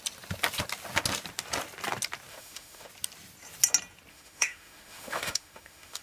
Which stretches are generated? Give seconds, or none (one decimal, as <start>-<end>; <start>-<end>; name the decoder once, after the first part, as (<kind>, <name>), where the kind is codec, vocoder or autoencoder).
2.3-2.9 (autoencoder, DAC-VAE); 4.1-6.0